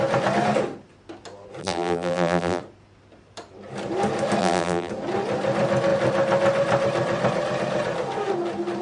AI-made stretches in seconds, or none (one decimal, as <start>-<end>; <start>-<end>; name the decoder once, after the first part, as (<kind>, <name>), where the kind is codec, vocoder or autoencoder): 1.6-2.6 (vocoder, BigVGAN v2); 4.4-4.9